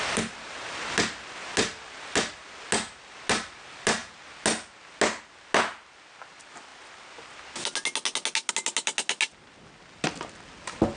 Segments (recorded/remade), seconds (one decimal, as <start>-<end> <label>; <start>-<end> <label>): 0.0-11.0 recorded